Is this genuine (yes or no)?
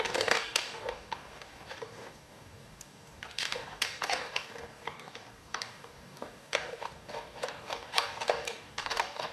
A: no